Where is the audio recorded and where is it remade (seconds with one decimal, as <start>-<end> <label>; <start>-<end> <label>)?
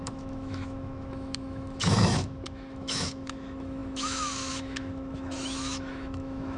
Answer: 0.0-6.6 remade